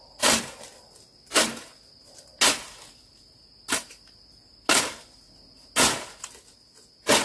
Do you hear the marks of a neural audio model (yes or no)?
no